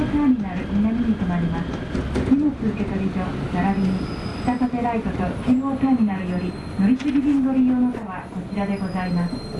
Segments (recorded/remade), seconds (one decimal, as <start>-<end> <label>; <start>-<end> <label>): 0.0-4.3 recorded; 4.3-6.5 remade; 6.5-9.6 recorded

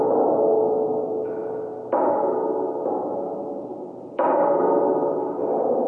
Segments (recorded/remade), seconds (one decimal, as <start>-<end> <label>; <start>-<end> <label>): 0.0-3.7 recorded; 3.7-5.4 remade; 5.4-5.9 recorded

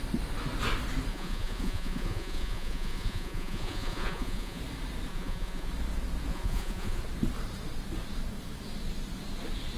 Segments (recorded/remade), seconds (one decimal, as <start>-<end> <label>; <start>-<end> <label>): 0.0-1.1 recorded; 1.1-4.6 remade; 4.6-5.1 recorded; 5.1-5.7 remade; 5.7-6.3 recorded; 6.3-7.0 remade; 7.0-9.8 recorded

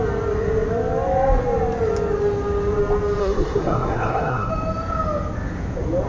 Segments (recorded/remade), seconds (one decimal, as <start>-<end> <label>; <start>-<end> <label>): 0.0-3.2 recorded; 3.2-4.5 remade; 4.5-6.1 recorded

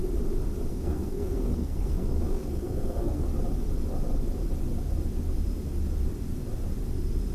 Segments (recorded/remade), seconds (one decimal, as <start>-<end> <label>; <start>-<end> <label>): 0.0-0.7 recorded; 0.7-3.2 remade; 3.2-7.3 recorded

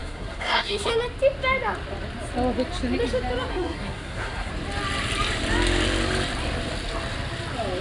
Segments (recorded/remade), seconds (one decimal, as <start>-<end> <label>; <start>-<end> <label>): 0.0-0.9 remade; 0.9-3.5 recorded; 3.5-4.5 remade; 4.5-7.8 recorded